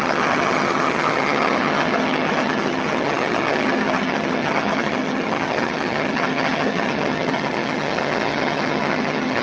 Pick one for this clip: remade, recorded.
remade